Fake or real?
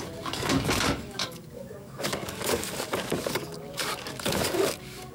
fake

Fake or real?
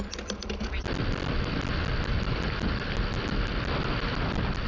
real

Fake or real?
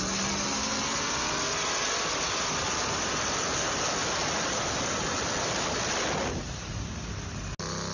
real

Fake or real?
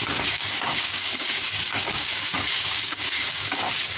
fake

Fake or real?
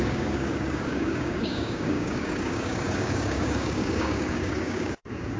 fake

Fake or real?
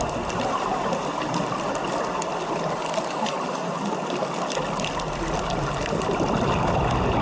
real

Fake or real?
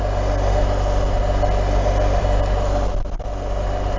real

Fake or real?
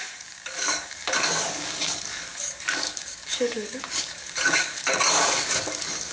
fake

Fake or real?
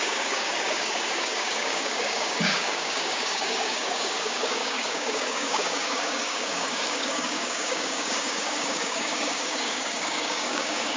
fake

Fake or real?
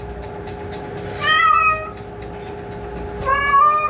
real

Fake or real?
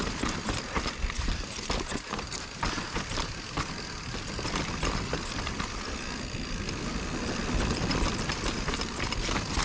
real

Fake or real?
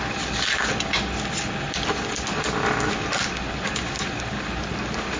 real